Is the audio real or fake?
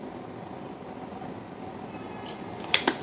real